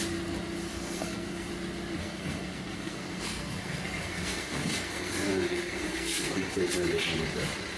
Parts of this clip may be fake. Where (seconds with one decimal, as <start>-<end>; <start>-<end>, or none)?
0.7-1.5; 2.0-6.6